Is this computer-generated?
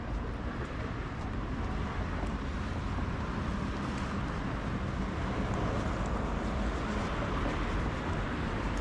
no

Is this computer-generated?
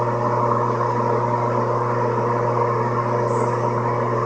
no